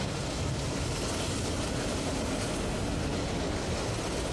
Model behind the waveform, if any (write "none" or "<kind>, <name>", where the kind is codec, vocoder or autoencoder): none